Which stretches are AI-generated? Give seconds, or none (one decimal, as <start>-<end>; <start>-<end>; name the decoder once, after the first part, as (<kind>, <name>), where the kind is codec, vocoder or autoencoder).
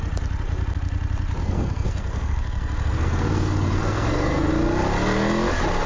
1.4-4.5 (codec, SNAC)